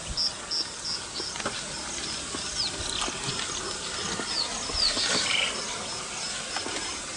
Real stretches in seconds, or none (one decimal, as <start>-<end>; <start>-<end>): 0.0-7.2